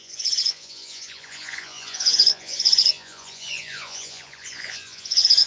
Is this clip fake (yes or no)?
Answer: yes